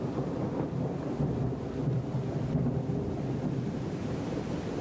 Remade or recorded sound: recorded